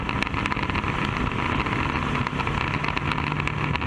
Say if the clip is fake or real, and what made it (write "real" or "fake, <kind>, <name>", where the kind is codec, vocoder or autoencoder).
real